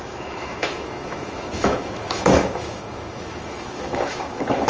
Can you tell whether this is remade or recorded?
remade